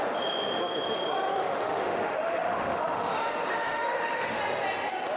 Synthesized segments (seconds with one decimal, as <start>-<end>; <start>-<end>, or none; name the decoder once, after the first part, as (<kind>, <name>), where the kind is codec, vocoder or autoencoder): 1.3-4.4 (autoencoder, DAC-VAE)